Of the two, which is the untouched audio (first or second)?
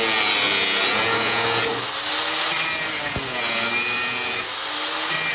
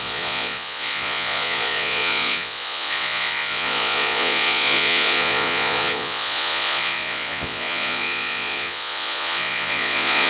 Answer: first